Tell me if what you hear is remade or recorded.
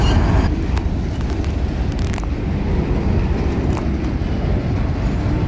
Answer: recorded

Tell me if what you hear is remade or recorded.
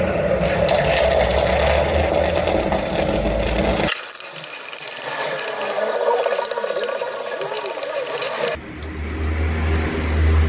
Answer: recorded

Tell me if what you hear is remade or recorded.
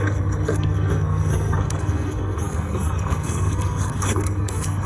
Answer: remade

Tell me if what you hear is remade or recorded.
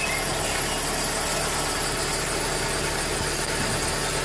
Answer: recorded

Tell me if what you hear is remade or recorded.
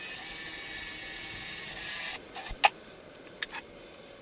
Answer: recorded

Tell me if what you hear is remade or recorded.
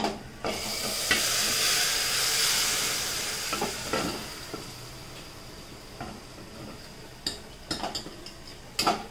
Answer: recorded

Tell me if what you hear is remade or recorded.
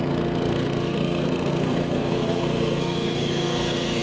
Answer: remade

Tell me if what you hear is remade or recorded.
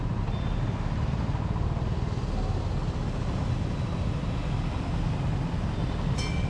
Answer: recorded